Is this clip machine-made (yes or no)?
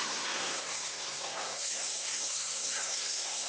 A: yes